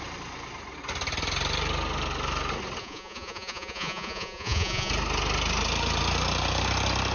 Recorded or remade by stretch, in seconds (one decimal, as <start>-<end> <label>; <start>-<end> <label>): 0.0-2.8 recorded; 2.8-4.9 remade; 4.9-7.1 recorded